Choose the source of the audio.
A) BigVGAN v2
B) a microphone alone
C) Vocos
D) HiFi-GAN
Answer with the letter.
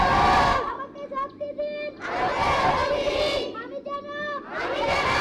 B